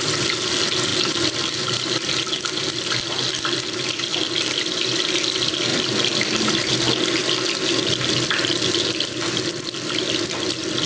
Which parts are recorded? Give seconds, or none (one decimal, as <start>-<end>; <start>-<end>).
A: 0.0-5.7; 6.7-10.9